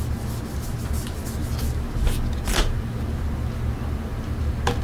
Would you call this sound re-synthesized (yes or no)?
no